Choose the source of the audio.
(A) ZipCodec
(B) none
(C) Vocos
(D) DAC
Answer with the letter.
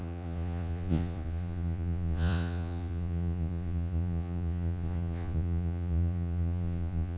C